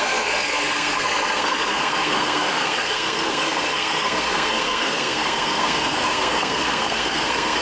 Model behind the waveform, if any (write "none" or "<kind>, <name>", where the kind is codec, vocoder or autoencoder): codec, SNAC